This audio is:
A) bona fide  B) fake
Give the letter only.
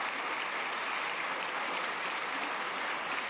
A